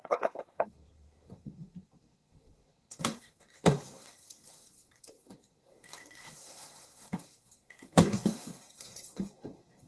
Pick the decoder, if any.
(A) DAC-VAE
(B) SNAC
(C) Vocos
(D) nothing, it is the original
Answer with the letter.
B